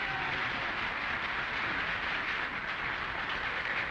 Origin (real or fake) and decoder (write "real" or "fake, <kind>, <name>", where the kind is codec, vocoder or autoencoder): real